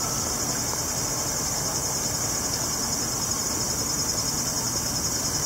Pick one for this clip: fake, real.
real